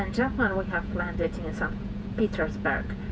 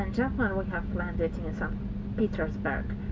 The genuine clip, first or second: second